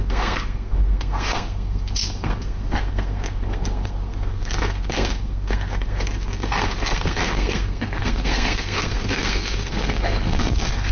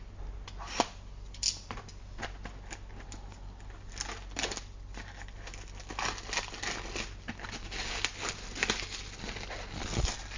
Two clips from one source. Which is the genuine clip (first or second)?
second